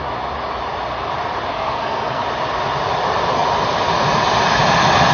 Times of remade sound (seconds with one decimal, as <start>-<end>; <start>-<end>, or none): 1.5-2.2